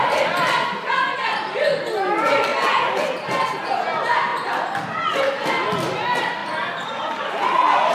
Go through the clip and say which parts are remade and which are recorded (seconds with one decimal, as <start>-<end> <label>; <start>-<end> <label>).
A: 0.0-7.9 recorded